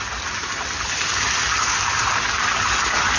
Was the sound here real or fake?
real